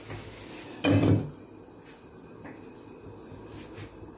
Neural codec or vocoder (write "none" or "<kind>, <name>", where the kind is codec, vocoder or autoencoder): none